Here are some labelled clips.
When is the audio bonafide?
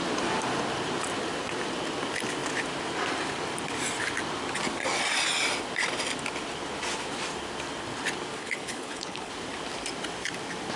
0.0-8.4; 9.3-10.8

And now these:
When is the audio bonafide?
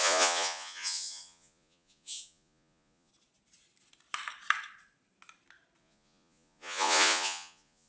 3.1-5.8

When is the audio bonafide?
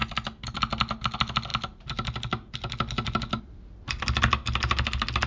0.0-5.3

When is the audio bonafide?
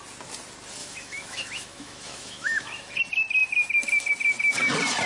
0.0-0.8; 3.0-5.1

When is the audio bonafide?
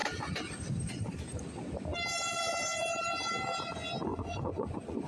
0.0-4.1